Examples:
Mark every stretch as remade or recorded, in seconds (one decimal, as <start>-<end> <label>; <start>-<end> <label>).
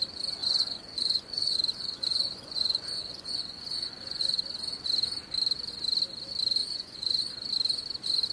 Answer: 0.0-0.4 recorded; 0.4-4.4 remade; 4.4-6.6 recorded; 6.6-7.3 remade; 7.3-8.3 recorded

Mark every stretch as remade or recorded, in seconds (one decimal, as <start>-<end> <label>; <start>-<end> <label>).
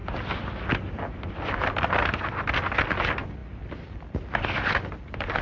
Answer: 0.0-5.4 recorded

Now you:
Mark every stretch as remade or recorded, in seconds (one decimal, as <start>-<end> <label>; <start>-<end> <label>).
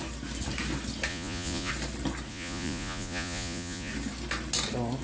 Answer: 0.0-1.1 recorded; 1.1-1.7 remade; 1.7-2.3 recorded; 2.3-3.9 remade; 3.9-5.0 recorded